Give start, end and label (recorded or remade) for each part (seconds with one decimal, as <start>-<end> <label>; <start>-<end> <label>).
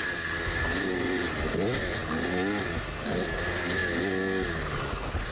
0.0-5.3 recorded